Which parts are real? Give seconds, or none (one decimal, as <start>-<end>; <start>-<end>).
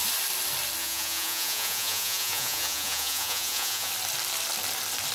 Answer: 0.0-0.8; 3.9-5.1